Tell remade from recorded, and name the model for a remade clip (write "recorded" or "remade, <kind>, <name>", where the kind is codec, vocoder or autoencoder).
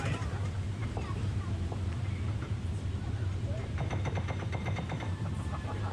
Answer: remade, vocoder, BigVGAN v2